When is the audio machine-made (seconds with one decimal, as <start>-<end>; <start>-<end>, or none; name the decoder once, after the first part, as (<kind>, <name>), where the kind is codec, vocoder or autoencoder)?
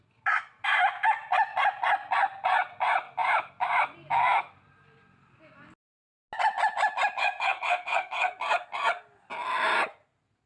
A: 7.2-8.3 (codec, SNAC)